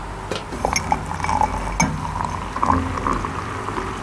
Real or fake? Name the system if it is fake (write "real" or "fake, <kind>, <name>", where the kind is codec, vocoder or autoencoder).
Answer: real